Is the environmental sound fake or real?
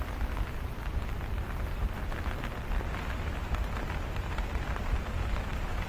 real